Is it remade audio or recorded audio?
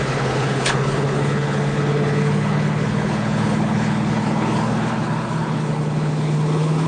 remade